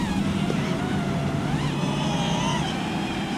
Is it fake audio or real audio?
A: real